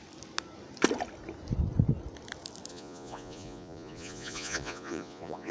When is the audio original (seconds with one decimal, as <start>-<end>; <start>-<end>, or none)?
0.0-2.7